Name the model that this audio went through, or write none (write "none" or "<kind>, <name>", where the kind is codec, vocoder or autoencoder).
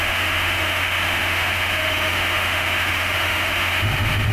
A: autoencoder, DAC-VAE